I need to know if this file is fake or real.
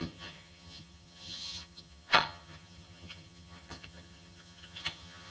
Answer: fake